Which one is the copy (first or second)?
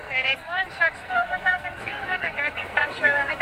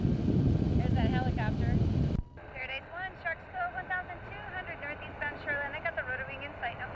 first